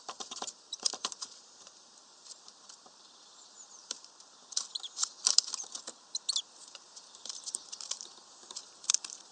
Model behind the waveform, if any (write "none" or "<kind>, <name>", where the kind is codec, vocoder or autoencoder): vocoder, BigVGAN v2